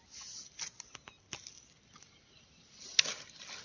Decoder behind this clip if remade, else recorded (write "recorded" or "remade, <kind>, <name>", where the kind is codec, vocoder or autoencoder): recorded